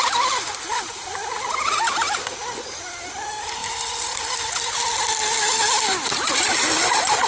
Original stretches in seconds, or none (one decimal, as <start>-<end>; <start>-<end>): 0.0-7.3